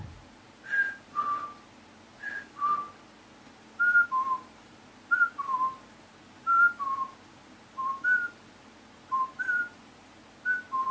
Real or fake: real